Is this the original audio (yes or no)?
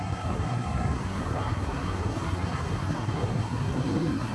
no